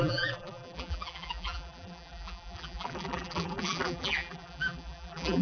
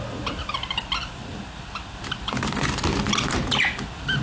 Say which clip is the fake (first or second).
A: first